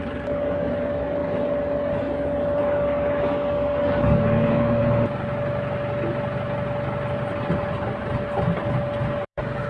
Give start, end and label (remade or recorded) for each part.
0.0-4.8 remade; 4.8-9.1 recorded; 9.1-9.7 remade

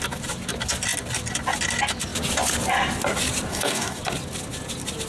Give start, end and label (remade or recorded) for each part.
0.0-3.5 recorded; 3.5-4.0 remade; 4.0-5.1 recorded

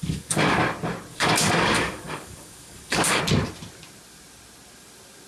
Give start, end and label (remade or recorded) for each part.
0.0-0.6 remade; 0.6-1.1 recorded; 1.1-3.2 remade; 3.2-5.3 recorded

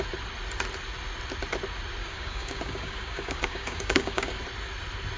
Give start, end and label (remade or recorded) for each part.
0.0-2.0 recorded; 2.0-4.4 remade; 4.4-5.2 recorded